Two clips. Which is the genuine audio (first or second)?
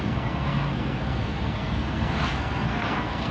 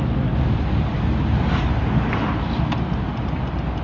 second